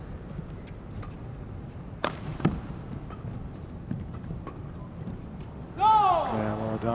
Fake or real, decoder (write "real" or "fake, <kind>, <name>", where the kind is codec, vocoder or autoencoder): fake, vocoder, BigVGAN v2